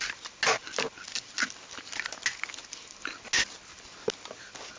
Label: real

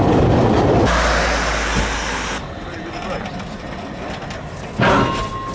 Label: real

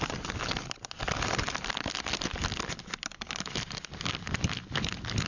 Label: real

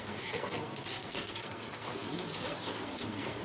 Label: fake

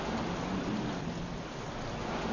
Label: real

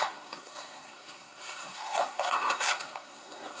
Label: fake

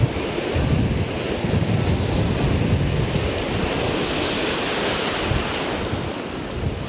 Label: real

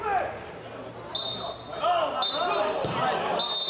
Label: real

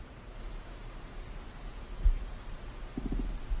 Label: fake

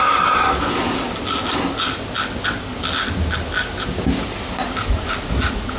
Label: real